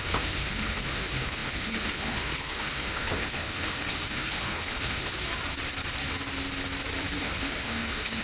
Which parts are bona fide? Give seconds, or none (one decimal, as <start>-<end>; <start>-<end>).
5.1-7.2